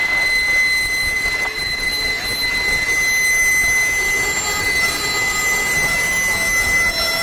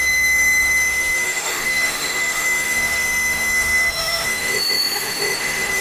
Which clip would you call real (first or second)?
first